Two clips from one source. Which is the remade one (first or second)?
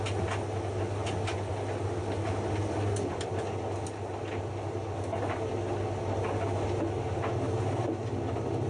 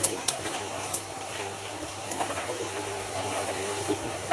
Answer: second